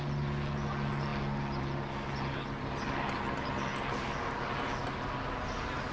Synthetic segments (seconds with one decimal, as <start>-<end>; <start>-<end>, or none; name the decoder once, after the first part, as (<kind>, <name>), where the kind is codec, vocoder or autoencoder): none